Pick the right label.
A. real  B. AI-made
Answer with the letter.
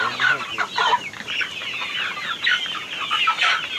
A